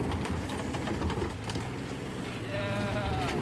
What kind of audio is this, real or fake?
real